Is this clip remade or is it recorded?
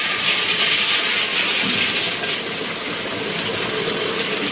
recorded